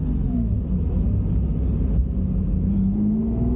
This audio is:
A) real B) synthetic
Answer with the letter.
A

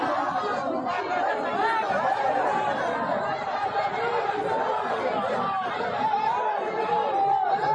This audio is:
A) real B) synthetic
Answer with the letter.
B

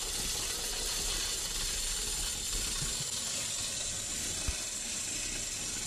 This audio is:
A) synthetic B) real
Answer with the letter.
B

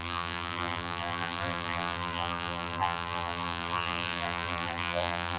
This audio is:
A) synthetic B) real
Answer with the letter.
A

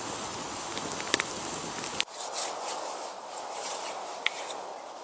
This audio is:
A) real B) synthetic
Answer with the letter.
A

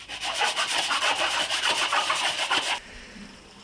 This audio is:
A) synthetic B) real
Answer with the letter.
A